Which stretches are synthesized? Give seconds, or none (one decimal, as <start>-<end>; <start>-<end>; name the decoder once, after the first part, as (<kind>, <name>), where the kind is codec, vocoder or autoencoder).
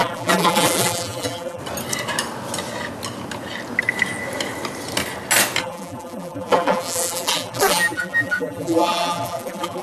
0.0-1.6 (vocoder, BigVGAN v2); 5.6-9.8